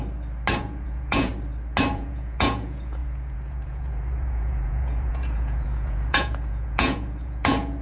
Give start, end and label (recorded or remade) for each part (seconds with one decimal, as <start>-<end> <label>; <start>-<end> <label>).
0.0-0.6 recorded; 0.6-1.3 remade; 1.3-1.9 recorded; 1.9-7.8 remade